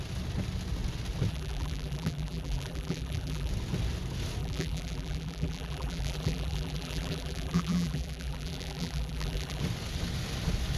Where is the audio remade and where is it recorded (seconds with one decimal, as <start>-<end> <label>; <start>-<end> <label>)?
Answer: 0.0-1.3 recorded; 1.3-3.5 remade; 3.5-4.4 recorded; 4.4-9.6 remade; 9.6-10.8 recorded

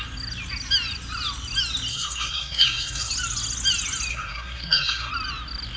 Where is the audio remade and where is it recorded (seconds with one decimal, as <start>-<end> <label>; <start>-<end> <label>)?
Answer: 0.0-1.9 recorded; 1.9-3.1 remade; 3.1-4.1 recorded; 4.1-5.1 remade; 5.1-5.8 recorded

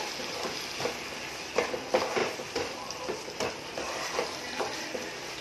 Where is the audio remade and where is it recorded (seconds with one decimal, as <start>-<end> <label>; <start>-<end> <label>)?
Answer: 0.0-2.2 recorded; 2.2-3.9 remade; 3.9-5.4 recorded